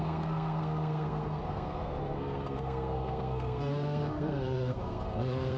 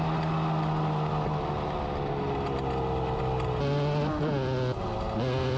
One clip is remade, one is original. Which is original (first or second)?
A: second